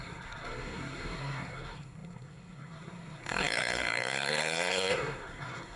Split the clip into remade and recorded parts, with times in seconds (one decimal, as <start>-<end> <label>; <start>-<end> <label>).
0.0-5.8 remade